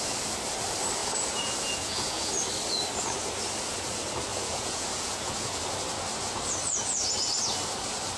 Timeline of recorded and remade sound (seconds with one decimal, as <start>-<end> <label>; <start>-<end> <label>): 0.0-1.0 recorded; 1.0-2.3 remade; 2.3-4.3 recorded; 4.3-5.6 remade; 5.6-8.2 recorded